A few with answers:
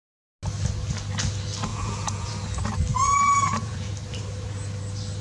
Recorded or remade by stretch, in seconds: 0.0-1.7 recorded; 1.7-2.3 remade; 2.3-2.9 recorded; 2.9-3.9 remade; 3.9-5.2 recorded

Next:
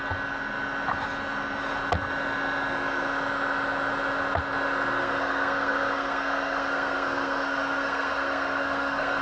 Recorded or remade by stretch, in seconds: 0.0-5.0 recorded; 5.0-9.2 remade

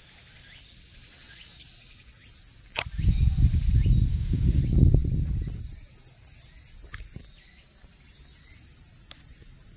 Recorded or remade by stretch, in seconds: 0.0-4.1 recorded; 4.1-4.6 remade; 4.6-9.8 recorded

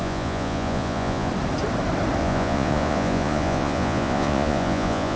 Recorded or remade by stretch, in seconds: 0.0-1.3 remade; 1.3-2.2 recorded; 2.2-5.2 remade

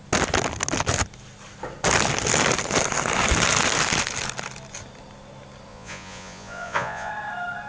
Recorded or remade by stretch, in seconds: 0.0-5.7 recorded; 5.7-7.1 remade; 7.1-7.7 recorded

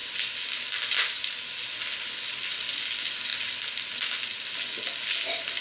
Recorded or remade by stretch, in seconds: 0.0-3.3 recorded; 3.3-3.9 remade; 3.9-5.6 recorded

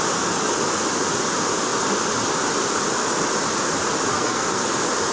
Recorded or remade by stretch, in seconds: 0.0-4.1 recorded; 4.1-4.6 remade; 4.6-5.1 recorded